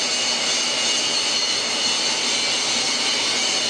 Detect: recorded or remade recorded